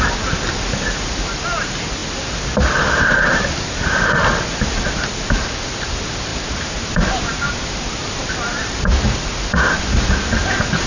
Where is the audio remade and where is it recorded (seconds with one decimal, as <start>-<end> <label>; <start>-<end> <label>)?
0.0-6.3 recorded; 6.3-9.8 remade; 9.8-10.9 recorded